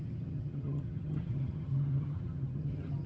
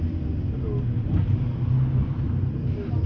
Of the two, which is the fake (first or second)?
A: first